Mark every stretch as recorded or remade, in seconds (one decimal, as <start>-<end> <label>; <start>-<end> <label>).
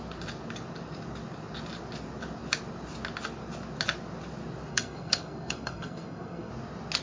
0.0-4.7 recorded; 4.7-6.5 remade; 6.5-7.0 recorded